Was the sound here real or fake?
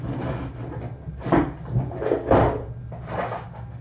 real